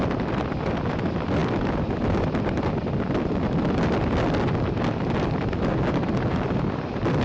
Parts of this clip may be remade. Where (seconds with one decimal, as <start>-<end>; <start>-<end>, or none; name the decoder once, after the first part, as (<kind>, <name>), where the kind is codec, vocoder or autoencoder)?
none